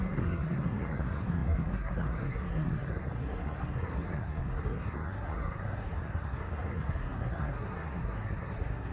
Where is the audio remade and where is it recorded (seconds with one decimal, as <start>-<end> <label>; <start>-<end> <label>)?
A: 0.0-8.9 remade